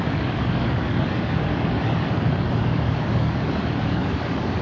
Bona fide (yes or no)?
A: no